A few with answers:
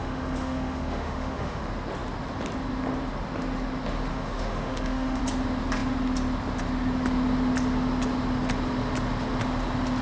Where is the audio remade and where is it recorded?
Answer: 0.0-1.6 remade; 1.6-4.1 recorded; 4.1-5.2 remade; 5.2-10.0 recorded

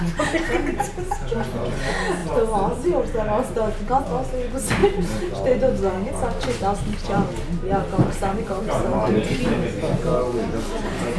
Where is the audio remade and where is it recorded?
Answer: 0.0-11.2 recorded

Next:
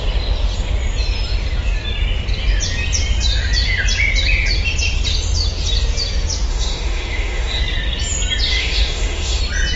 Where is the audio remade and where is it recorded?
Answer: 0.0-6.5 recorded; 6.5-7.6 remade; 7.6-8.5 recorded; 8.5-9.4 remade; 9.4-9.8 recorded

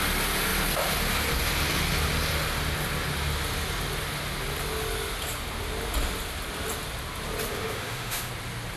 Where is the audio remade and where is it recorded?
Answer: 0.0-7.5 recorded; 7.5-8.3 remade; 8.3-8.8 recorded

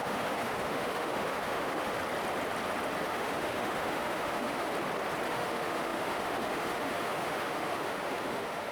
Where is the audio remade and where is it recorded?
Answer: 0.0-2.0 remade; 2.0-3.0 recorded; 3.0-4.7 remade; 4.7-5.3 recorded; 5.3-8.7 remade

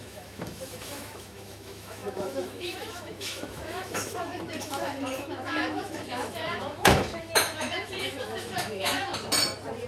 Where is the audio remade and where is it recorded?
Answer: 0.0-9.1 remade; 9.1-9.9 recorded